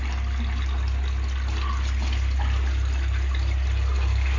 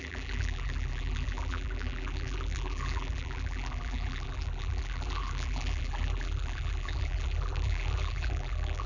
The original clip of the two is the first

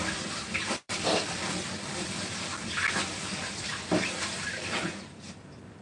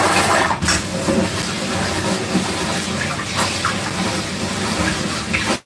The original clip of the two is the second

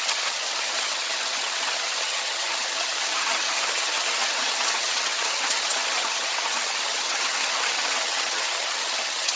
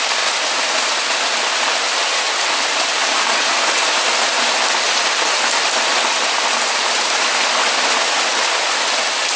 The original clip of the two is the second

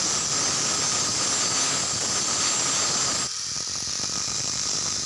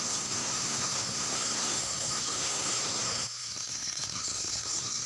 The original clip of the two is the first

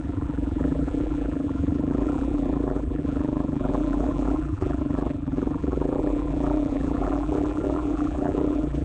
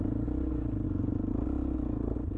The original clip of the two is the second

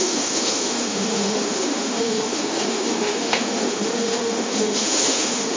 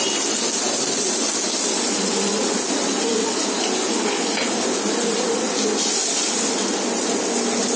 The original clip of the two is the second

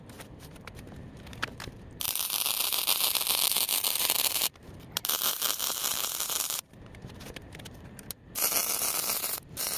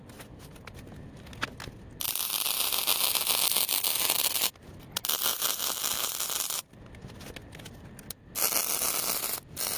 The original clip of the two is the second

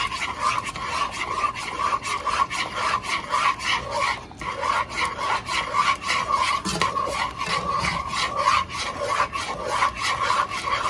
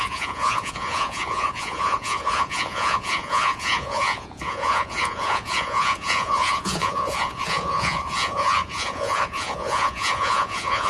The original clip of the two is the first